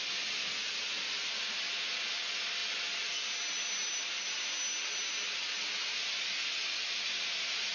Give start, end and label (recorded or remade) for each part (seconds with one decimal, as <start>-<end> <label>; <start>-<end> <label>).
0.0-7.7 recorded